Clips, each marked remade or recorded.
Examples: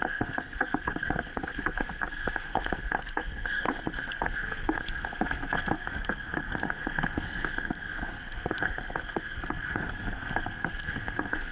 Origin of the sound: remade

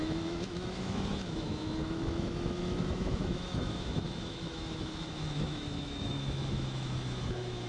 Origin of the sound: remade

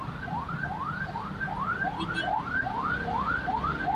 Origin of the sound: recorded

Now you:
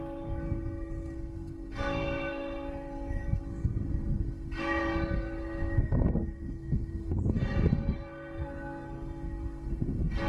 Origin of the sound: remade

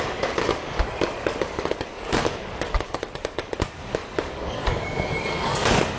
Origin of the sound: remade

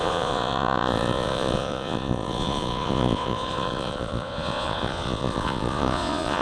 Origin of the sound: remade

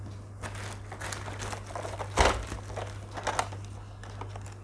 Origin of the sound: recorded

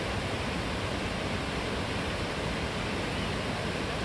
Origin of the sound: recorded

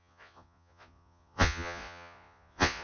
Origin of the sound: remade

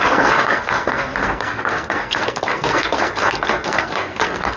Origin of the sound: remade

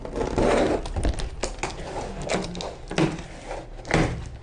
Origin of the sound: recorded